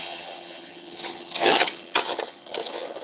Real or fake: fake